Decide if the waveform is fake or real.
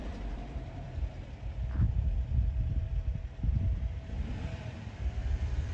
fake